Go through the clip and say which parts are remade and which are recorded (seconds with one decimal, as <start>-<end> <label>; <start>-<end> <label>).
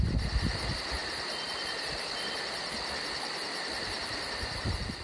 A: 0.0-5.0 recorded